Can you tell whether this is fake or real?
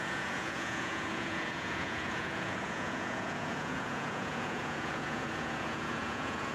fake